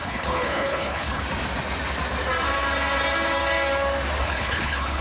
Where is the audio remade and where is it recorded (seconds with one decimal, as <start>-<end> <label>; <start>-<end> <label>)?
0.0-1.2 remade; 1.2-4.2 recorded; 4.2-5.0 remade